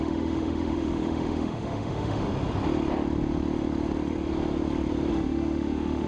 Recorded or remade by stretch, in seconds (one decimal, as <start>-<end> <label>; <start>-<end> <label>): 0.0-2.3 remade; 2.3-5.1 recorded; 5.1-6.1 remade